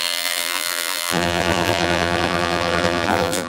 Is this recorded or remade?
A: remade